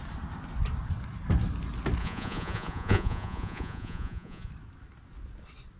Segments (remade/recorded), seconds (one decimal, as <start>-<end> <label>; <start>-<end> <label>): 0.0-2.0 recorded; 2.0-4.5 remade; 4.5-5.8 recorded